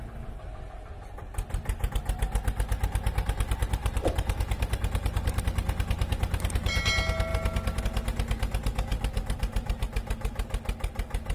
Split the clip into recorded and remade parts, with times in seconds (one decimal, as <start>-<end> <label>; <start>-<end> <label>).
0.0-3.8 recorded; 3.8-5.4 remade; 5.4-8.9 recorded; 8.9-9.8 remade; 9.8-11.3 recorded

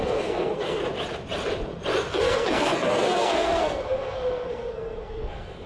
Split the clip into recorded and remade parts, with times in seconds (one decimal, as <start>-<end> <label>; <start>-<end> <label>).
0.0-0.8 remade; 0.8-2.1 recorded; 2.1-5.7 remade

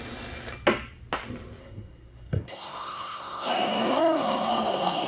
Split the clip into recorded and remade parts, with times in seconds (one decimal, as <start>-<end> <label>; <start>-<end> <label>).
0.0-1.6 recorded; 1.6-5.1 remade

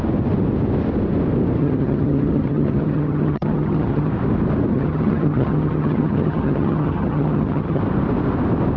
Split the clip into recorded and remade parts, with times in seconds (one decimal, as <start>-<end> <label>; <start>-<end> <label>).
0.0-1.6 recorded; 1.6-4.1 remade; 4.1-4.7 recorded; 4.7-7.8 remade; 7.8-8.8 recorded

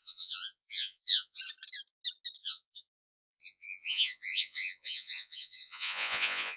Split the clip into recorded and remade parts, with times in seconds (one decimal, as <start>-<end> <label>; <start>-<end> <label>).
0.0-1.4 remade; 1.4-2.4 recorded; 2.4-6.6 remade

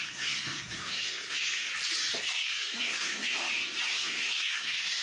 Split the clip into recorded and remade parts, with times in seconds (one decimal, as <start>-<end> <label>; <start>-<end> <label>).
0.0-1.7 remade; 1.7-2.2 recorded; 2.2-3.4 remade; 3.4-3.9 recorded; 3.9-5.0 remade

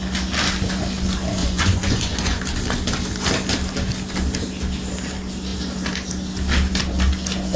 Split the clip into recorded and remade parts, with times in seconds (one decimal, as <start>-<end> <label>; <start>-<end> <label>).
0.0-1.4 recorded; 1.4-2.4 remade; 2.4-7.6 recorded